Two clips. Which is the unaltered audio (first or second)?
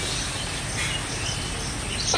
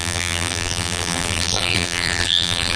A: first